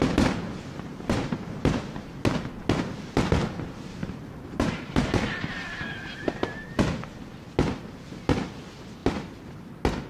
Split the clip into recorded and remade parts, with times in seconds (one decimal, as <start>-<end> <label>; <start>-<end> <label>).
0.0-1.8 remade; 1.8-4.0 recorded; 4.0-6.8 remade; 6.8-10.1 recorded